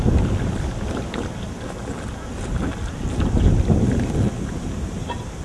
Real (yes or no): yes